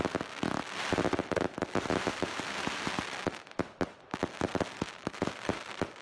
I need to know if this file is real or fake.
real